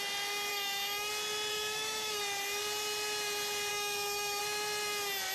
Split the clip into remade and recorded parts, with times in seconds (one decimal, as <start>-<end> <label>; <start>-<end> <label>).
0.0-0.5 recorded; 0.5-1.1 remade; 1.1-1.5 recorded; 1.5-2.2 remade; 2.2-3.7 recorded; 3.7-4.4 remade; 4.4-5.3 recorded